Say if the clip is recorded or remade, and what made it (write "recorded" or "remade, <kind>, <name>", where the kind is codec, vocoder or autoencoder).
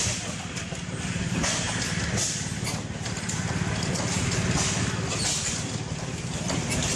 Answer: recorded